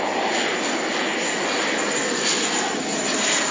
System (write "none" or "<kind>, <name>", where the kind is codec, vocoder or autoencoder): none